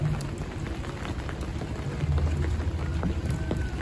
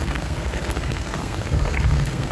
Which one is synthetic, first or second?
second